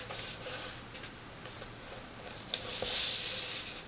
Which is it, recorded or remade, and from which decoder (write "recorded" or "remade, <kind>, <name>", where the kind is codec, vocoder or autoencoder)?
recorded